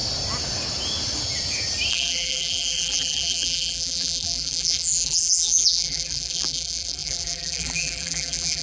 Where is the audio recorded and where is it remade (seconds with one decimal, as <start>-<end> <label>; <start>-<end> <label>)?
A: 0.0-1.9 recorded; 1.9-8.6 remade